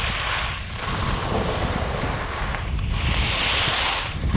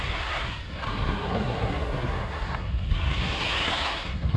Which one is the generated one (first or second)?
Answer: second